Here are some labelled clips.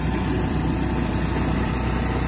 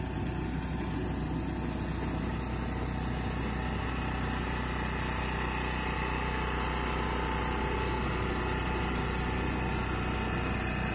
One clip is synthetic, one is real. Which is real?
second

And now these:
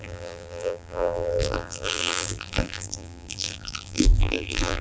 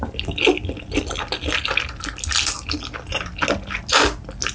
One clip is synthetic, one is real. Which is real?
second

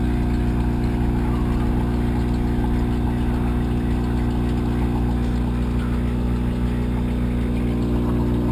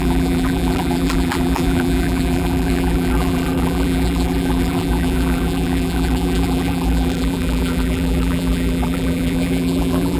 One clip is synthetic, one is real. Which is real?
first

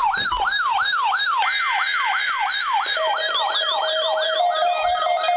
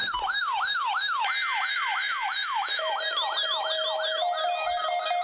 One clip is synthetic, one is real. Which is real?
second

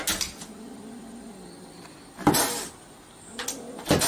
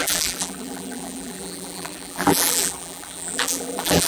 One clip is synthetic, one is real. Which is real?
first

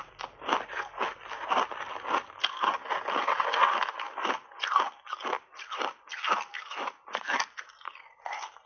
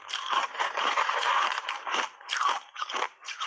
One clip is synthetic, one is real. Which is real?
first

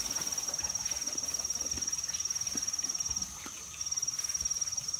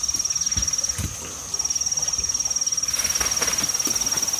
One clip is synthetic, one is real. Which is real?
second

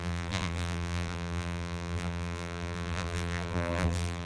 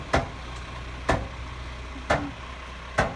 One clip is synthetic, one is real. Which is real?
second